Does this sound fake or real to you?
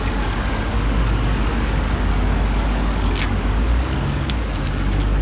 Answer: fake